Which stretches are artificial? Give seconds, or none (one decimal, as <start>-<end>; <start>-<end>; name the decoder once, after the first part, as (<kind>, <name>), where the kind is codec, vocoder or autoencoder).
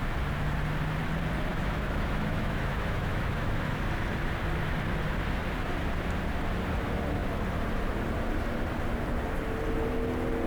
1.5-3.8 (autoencoder, DAC-VAE)